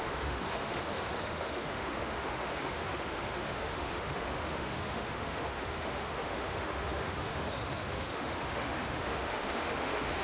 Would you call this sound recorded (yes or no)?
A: no